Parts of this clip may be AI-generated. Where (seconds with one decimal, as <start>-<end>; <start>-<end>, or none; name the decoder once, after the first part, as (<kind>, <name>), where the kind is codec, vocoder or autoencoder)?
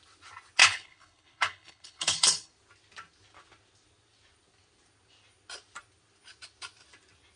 0.6-2.5 (codec, HILCodec)